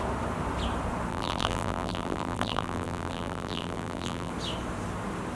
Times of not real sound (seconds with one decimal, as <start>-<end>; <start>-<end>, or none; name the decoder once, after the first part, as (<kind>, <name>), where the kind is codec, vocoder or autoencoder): 1.1-4.3 (vocoder, BigVGAN v2)